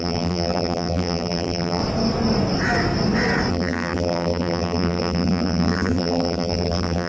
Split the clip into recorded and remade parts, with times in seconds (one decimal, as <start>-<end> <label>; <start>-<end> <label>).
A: 0.0-1.8 remade; 1.8-3.5 recorded; 3.5-7.1 remade